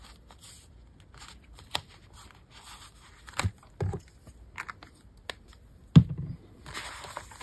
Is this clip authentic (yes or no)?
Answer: yes